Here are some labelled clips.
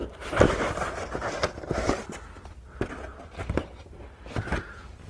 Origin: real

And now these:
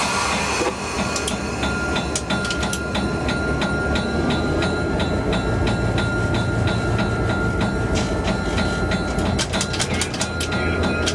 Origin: real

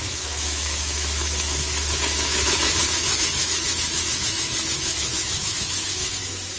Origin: fake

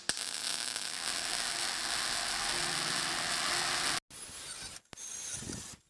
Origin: real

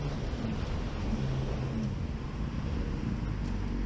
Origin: real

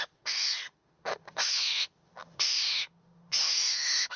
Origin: fake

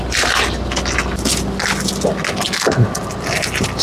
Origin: real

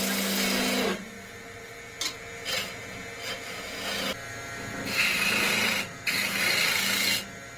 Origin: real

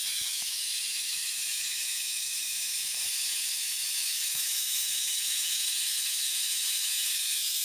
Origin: fake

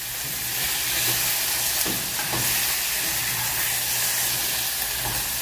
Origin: real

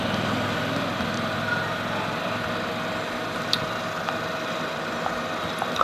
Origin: real